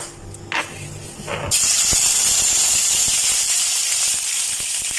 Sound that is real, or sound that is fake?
real